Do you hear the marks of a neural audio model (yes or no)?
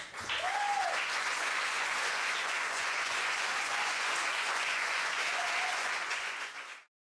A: yes